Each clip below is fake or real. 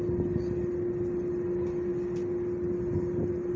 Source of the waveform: real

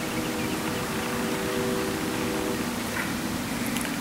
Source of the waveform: real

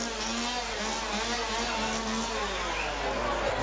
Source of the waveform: real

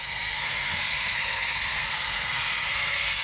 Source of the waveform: fake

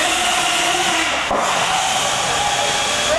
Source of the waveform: real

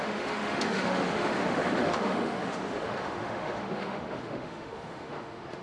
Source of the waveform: fake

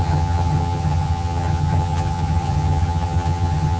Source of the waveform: fake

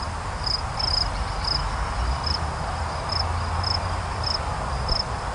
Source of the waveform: real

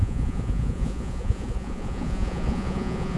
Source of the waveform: fake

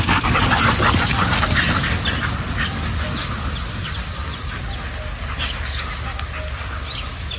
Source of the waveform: real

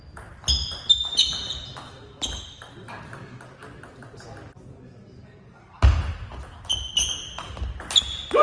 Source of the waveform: real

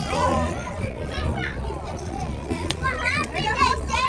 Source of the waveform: fake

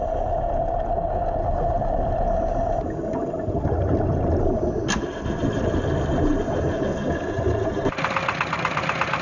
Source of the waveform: real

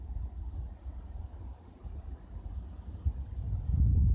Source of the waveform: real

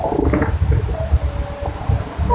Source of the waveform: real